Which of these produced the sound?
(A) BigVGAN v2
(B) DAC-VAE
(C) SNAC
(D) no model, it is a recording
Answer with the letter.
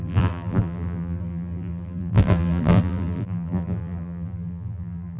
A